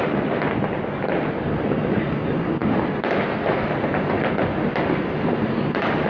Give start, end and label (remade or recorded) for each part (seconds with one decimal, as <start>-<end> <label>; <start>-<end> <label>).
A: 0.0-6.1 recorded